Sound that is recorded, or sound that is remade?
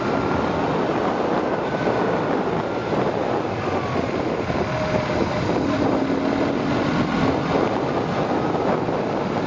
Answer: recorded